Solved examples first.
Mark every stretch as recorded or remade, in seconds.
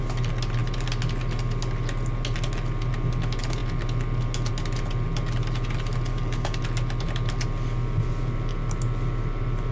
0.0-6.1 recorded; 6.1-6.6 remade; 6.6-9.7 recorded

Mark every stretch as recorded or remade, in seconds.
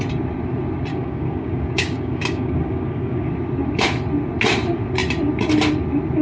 0.0-0.9 recorded; 0.9-3.3 remade; 3.3-6.2 recorded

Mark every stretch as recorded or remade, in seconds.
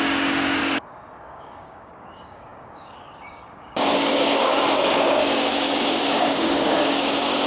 0.0-0.6 remade; 0.6-1.2 recorded; 1.2-7.5 remade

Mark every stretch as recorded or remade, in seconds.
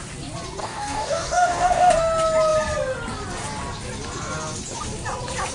0.0-0.6 recorded; 0.6-1.9 remade; 1.9-5.5 recorded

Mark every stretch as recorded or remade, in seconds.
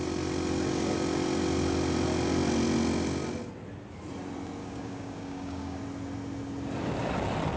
0.0-4.6 recorded; 4.6-5.8 remade; 5.8-7.6 recorded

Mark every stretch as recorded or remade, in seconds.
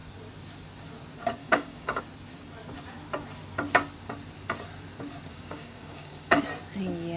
0.0-1.4 recorded; 1.4-2.0 remade; 2.0-5.3 recorded; 5.3-6.4 remade; 6.4-7.2 recorded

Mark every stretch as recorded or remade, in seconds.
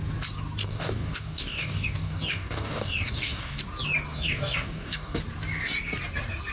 0.0-0.6 recorded; 0.6-3.6 remade; 3.6-4.1 recorded; 4.1-5.2 remade; 5.2-6.5 recorded